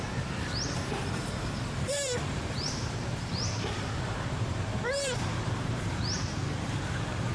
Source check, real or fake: fake